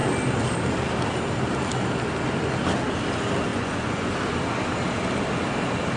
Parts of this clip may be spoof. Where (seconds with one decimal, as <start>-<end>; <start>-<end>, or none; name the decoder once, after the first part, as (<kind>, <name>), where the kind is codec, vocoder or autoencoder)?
3.5-4.1 (vocoder, Vocos)